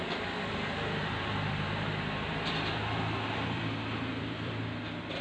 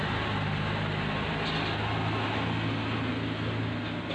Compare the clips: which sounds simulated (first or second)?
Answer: first